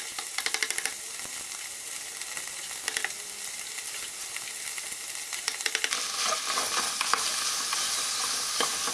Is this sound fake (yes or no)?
no